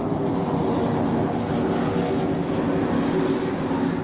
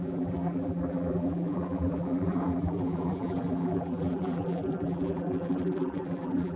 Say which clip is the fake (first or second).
second